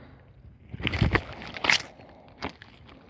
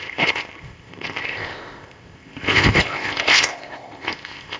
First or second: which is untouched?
first